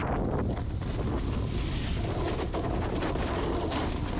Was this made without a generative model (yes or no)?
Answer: yes